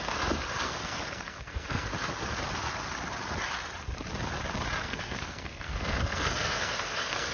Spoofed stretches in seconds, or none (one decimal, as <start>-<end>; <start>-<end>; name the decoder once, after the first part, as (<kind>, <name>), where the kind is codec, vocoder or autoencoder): 0.0-1.9 (codec, SNAC); 4.8-7.3